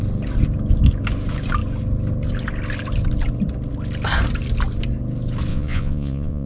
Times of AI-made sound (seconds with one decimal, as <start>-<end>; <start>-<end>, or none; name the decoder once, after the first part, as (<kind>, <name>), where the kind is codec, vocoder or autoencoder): 5.5-6.5 (vocoder, Vocos)

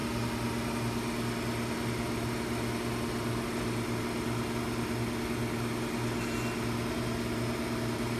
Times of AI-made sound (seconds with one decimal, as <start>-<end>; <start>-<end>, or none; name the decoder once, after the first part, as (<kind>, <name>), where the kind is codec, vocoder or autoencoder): none

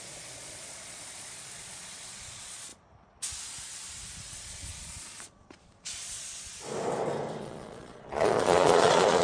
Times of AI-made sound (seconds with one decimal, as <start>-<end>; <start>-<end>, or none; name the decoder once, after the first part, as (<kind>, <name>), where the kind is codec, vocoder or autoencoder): 0.0-2.7 (vocoder, Vocos); 4.3-6.5; 7.4-9.2